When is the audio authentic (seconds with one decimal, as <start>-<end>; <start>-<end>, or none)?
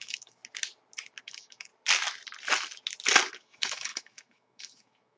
0.4-1.2; 1.7-3.4